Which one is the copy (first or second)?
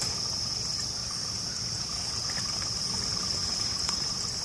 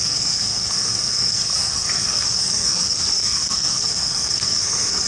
second